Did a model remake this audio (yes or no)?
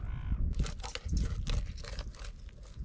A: no